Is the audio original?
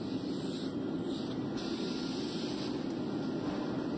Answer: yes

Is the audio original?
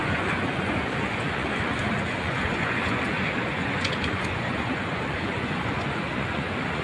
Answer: no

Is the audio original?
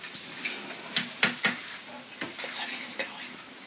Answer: yes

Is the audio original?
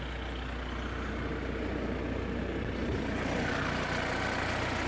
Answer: yes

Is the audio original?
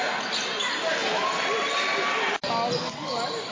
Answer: yes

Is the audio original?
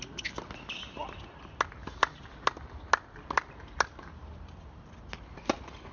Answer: yes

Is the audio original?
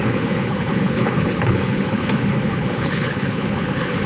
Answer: no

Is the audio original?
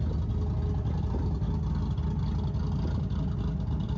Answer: yes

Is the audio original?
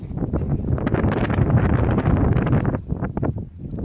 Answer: yes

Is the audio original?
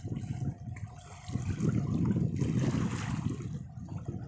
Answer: yes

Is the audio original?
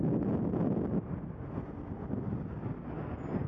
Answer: yes